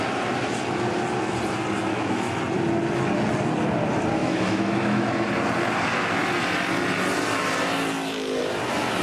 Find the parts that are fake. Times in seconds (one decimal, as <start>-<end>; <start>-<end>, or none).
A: 1.9-2.4; 4.2-5.3